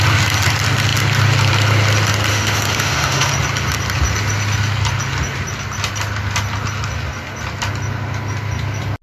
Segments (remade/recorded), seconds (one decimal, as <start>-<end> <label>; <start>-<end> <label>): 0.0-2.3 recorded; 2.3-3.3 remade; 3.3-9.0 recorded

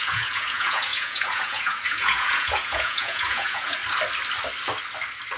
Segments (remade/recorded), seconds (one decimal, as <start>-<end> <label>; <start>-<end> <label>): 0.0-3.8 remade; 3.8-5.4 recorded

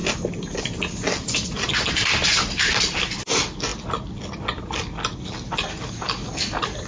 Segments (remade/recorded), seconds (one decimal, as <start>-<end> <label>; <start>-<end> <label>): 0.0-6.9 recorded

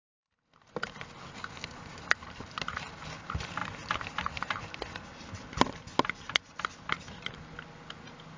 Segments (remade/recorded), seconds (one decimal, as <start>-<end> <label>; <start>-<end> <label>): 0.0-8.4 recorded

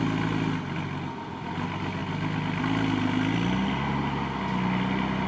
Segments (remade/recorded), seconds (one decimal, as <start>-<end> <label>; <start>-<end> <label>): 0.0-5.3 recorded

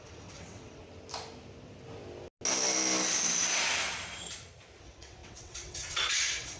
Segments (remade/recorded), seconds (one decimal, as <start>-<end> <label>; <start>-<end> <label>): 0.0-0.8 remade; 0.8-4.8 recorded; 4.8-6.6 remade

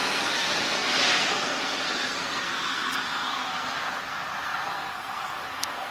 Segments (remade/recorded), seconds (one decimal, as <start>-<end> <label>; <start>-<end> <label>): 0.0-5.9 remade